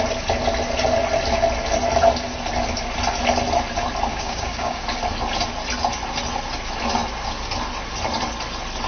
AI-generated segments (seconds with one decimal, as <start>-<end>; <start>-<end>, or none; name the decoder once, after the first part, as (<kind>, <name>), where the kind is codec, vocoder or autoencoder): 4.1-4.8 (codec, DAC)